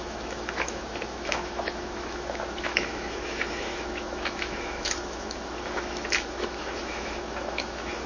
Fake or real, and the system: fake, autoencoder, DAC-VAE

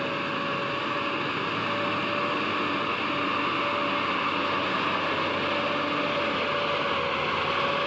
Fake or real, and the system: real